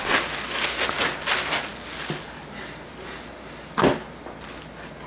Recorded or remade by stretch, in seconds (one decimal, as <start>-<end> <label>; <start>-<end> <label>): 0.0-5.1 recorded